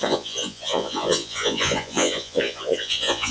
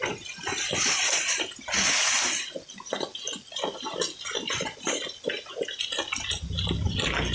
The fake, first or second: first